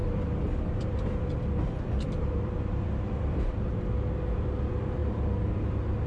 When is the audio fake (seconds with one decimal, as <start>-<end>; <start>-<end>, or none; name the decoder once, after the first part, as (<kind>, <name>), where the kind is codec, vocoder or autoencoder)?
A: 0.0-3.7 (vocoder, BigVGAN v2); 5.0-5.5